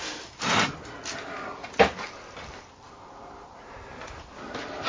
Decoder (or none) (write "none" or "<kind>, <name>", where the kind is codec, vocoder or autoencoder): none